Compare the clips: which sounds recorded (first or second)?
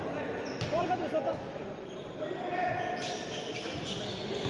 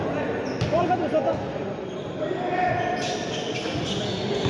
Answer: second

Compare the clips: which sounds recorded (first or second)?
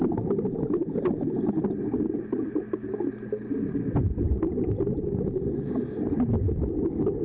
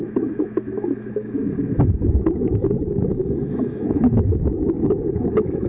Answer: first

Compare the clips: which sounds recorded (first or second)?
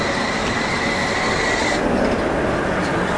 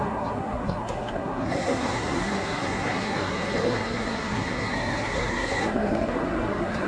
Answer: first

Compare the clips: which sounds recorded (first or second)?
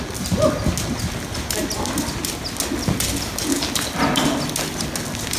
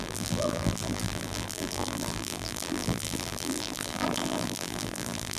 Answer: first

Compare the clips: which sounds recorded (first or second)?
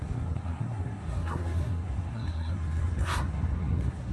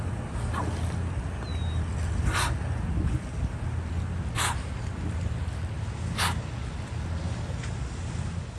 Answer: second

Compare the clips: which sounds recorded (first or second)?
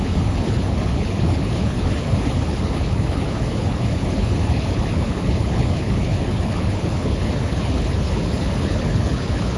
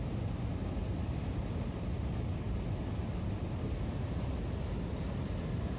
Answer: second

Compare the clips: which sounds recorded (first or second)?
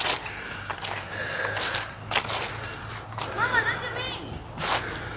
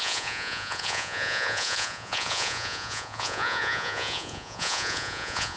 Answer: first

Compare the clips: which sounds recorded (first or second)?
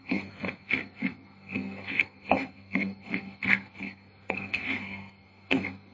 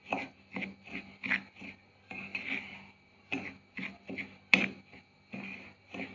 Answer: second